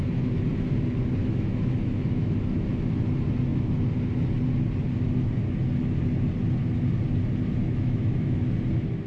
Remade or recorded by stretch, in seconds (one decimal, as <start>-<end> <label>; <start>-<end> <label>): 0.0-1.2 recorded; 1.2-2.3 remade; 2.3-7.6 recorded; 7.6-8.5 remade; 8.5-9.1 recorded